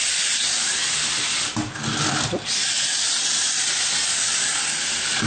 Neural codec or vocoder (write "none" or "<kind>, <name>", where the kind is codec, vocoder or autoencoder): none